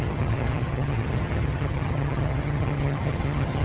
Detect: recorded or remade remade